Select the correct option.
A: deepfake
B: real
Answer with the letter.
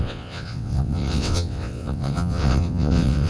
A